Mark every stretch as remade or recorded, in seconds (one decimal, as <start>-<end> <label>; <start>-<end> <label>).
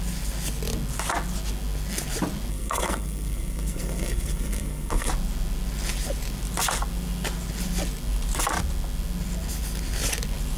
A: 0.0-2.5 recorded; 2.5-5.1 remade; 5.1-10.6 recorded